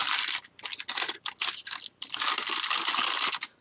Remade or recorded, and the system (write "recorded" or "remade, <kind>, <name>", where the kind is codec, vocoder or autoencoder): recorded